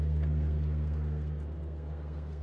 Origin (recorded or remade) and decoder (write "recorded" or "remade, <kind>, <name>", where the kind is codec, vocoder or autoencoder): remade, codec, SNAC